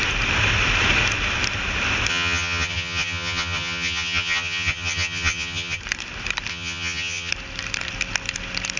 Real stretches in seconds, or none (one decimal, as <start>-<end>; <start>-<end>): 0.0-2.1; 5.8-6.5; 7.3-8.8